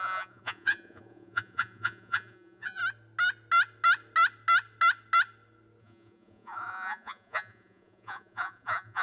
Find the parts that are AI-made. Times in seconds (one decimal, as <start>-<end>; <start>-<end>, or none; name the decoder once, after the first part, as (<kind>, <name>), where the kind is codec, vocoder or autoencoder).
0.0-2.8 (vocoder, Vocos); 5.8-9.0